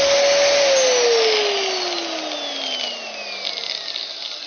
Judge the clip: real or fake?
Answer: real